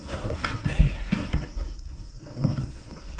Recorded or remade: remade